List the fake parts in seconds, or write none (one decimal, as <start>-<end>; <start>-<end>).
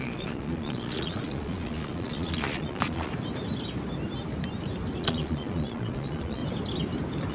0.0-3.1; 5.0-6.4